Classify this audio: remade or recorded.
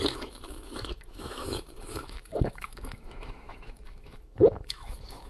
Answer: remade